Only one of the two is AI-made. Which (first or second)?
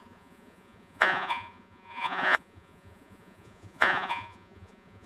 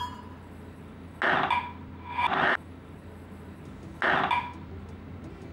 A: first